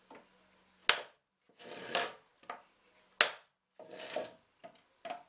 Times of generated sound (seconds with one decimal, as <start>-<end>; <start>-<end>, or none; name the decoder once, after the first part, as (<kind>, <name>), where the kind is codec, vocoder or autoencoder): none